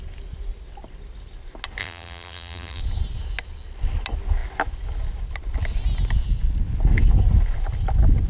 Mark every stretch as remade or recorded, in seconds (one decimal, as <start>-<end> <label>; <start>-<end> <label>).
0.0-1.8 recorded; 1.8-2.8 remade; 2.8-8.3 recorded